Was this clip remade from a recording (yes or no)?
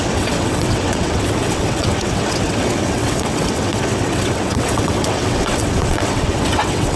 yes